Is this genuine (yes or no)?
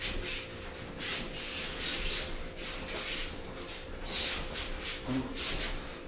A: yes